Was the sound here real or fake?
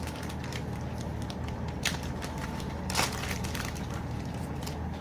fake